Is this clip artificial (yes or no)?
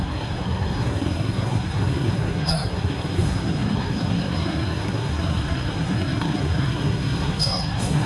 yes